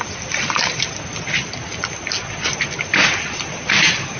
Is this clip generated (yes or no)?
no